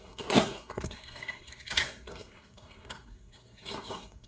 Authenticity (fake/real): fake